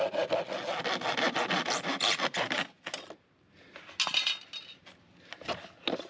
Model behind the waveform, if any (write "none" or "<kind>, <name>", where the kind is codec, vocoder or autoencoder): none